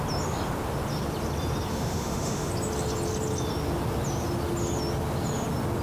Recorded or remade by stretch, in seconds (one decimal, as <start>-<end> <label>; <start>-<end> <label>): 0.0-1.7 recorded; 1.7-2.5 remade; 2.5-5.8 recorded